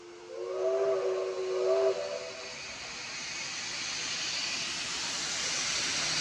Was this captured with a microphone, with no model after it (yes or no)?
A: yes